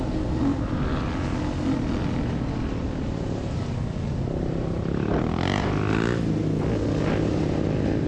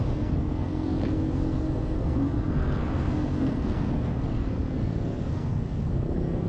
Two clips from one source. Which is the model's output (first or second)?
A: second